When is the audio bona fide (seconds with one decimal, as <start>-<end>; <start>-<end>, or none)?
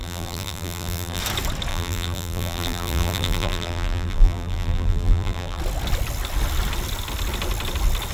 1.2-1.7; 5.6-8.1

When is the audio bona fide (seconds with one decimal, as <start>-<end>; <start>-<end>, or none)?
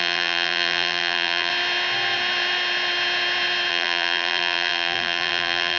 1.5-3.7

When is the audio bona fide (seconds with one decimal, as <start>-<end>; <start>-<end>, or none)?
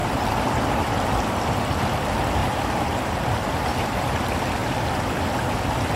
1.7-2.4; 4.0-4.6; 5.2-6.0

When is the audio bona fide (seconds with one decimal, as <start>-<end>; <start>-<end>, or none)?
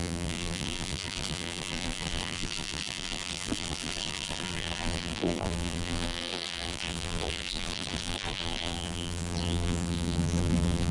none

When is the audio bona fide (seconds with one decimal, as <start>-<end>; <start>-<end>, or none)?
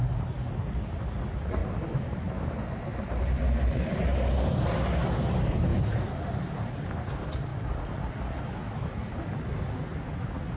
0.0-1.6; 2.5-2.9; 3.4-5.7; 7.1-10.6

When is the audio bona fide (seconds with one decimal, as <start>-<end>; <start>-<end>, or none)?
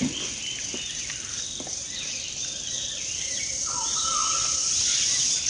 0.0-0.4; 3.7-4.2; 4.7-5.5